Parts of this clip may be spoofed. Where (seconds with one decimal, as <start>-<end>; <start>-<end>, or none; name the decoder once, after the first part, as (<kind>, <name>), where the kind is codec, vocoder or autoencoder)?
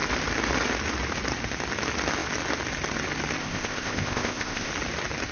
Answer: 3.4-4.7 (codec, ZipCodec)